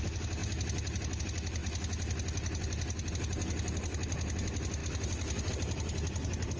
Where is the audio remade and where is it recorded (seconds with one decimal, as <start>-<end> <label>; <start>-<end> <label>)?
0.0-1.6 recorded; 1.6-3.1 remade; 3.1-4.8 recorded; 4.8-5.5 remade; 5.5-6.6 recorded